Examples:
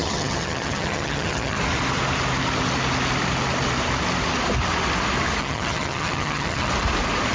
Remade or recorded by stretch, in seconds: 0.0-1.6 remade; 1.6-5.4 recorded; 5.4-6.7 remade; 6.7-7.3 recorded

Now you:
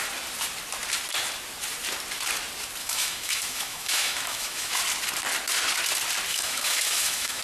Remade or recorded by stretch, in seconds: 0.0-2.8 recorded; 2.8-4.8 remade; 4.8-6.3 recorded; 6.3-7.4 remade

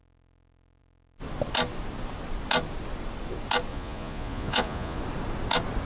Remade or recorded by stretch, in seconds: 0.0-3.7 recorded; 3.7-5.0 remade; 5.0-5.8 recorded

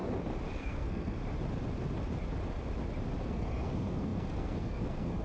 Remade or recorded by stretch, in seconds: 0.0-0.5 recorded; 0.5-1.2 remade; 1.2-3.2 recorded; 3.2-5.2 remade

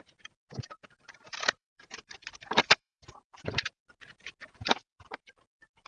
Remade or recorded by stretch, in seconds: 0.0-3.8 remade; 3.8-4.7 recorded; 4.7-5.9 remade

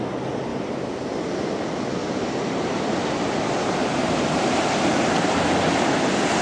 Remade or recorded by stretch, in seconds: 0.0-0.5 recorded; 0.5-1.0 remade; 1.0-2.0 recorded; 2.0-2.8 remade; 2.8-3.8 recorded; 3.8-5.4 remade; 5.4-6.4 recorded

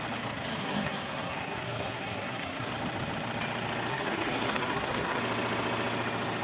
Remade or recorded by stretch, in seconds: 0.0-0.6 recorded; 0.6-2.7 remade; 2.7-3.9 recorded; 3.9-5.2 remade; 5.2-6.4 recorded